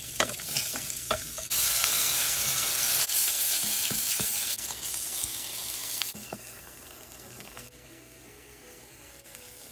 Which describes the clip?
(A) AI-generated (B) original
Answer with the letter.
A